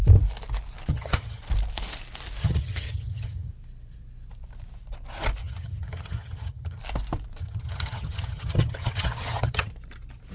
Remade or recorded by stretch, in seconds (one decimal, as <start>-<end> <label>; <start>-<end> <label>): 0.0-0.9 recorded; 0.9-1.4 remade; 1.4-2.4 recorded; 2.4-3.5 remade; 3.5-5.4 recorded; 5.4-6.8 remade; 6.8-7.4 recorded; 7.4-9.7 remade; 9.7-10.3 recorded